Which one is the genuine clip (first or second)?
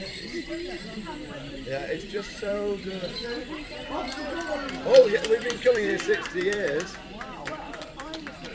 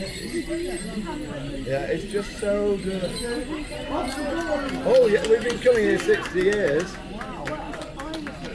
second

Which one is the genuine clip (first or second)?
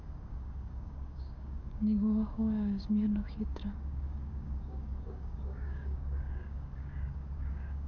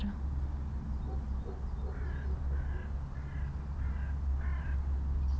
second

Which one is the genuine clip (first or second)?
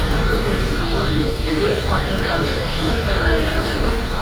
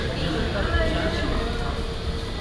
second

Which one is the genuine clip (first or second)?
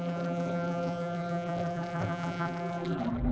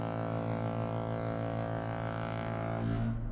second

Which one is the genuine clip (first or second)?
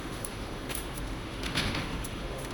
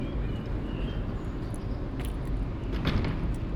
second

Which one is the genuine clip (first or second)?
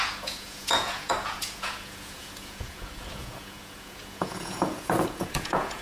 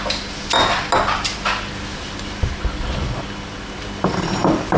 second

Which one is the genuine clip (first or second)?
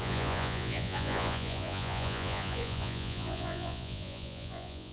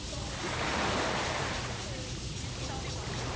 second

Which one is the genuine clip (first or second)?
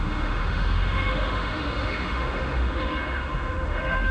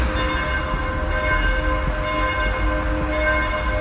second